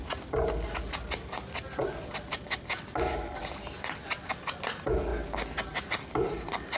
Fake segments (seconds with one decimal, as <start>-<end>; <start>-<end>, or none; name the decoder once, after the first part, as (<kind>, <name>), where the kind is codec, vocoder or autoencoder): none

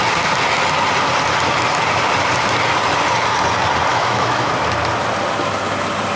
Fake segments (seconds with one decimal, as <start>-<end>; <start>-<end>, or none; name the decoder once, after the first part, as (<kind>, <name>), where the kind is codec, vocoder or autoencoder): 3.9-4.5 (autoencoder, DAC-VAE)

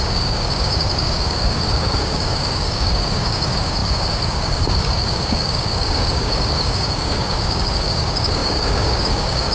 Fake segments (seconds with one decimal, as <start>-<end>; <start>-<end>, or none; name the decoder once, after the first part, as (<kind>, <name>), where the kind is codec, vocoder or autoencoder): 0.0-9.5 (codec, DAC)

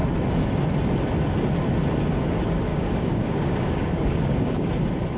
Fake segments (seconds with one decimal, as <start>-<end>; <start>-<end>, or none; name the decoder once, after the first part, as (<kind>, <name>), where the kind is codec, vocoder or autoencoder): 2.7-4.7 (codec, DAC)

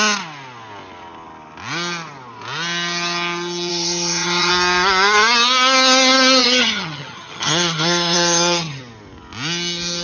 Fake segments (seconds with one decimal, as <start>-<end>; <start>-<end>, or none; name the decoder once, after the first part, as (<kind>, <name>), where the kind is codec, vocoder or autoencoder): 3.7-4.5 (vocoder, HiFi-GAN); 6.4-8.8

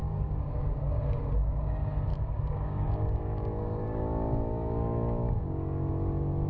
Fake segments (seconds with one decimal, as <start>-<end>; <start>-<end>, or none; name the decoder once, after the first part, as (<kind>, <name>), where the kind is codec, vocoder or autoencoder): 0.0-0.8 (codec, DAC); 2.1-5.9

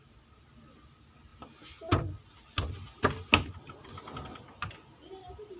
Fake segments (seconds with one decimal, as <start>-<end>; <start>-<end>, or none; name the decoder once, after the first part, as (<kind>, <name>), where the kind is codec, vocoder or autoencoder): none